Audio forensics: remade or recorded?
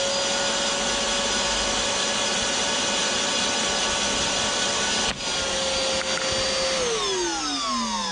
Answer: recorded